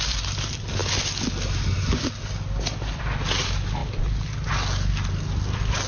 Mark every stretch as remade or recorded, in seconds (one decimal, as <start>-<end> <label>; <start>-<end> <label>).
0.0-5.9 recorded